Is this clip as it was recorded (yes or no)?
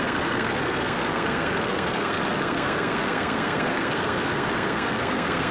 no